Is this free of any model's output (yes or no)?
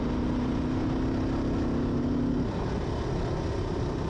yes